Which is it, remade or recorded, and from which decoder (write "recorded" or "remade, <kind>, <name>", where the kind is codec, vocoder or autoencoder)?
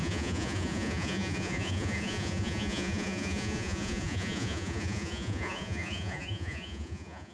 remade, vocoder, Vocos